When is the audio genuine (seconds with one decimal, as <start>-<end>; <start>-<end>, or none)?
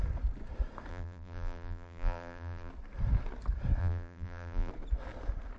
0.0-0.9; 2.7-3.8; 4.7-5.6